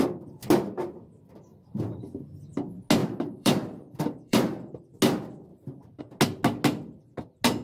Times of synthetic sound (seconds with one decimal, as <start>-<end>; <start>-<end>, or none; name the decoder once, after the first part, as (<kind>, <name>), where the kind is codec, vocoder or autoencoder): 1.5-2.0 (vocoder, BigVGAN v2); 3.0-4.8; 5.5-6.0